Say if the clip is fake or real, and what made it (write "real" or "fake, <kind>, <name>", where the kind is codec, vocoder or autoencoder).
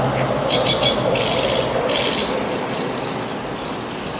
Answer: real